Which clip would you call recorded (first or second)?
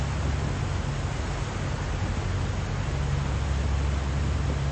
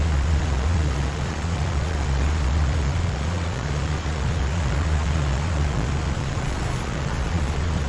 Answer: first